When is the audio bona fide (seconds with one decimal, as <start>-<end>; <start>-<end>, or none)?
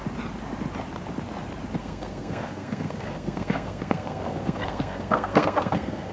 0.0-1.8